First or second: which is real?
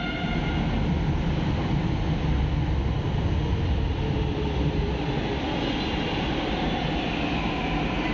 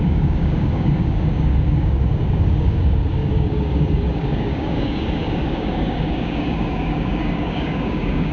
first